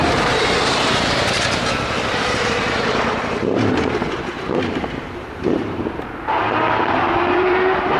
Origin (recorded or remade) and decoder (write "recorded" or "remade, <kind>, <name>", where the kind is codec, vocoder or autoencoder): remade, vocoder, BigVGAN v2